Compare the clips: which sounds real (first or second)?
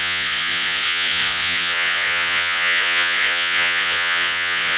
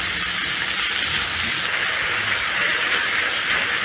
second